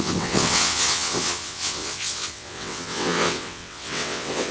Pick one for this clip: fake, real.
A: fake